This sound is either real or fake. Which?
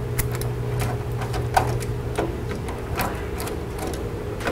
real